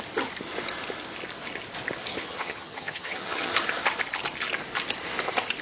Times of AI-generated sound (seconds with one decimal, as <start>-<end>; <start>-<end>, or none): 2.1-3.5